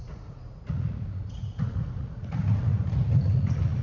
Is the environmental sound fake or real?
fake